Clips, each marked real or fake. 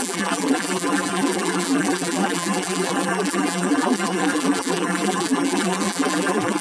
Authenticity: fake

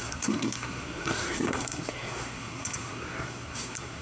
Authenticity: fake